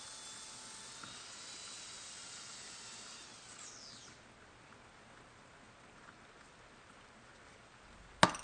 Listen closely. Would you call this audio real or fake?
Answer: real